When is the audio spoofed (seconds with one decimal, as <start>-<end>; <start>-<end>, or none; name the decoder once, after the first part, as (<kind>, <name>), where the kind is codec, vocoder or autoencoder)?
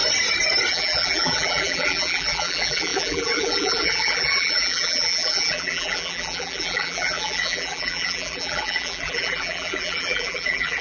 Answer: 0.7-10.8 (vocoder, BigVGAN v2)